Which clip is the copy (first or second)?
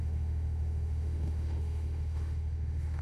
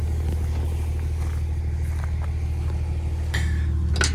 first